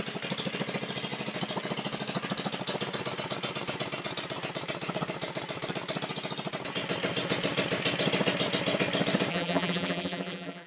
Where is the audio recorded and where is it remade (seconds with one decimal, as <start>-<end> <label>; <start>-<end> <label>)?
0.0-9.3 recorded; 9.3-10.7 remade